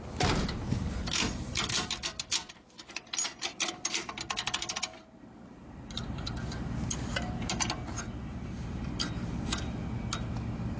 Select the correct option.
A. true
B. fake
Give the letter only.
A